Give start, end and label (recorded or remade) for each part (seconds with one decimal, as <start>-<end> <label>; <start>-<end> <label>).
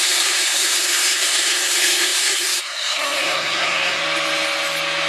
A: 0.0-4.0 remade; 4.0-5.1 recorded